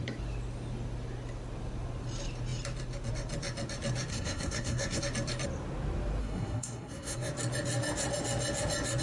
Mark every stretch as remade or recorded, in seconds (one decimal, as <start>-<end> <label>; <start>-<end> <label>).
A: 0.0-4.1 recorded; 4.1-5.0 remade; 5.0-6.2 recorded; 6.2-7.3 remade; 7.3-9.0 recorded